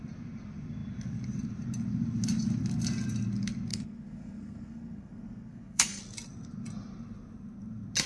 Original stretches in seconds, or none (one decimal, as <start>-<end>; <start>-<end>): 0.0-3.7; 6.0-8.1